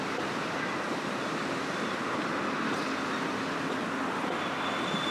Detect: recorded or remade recorded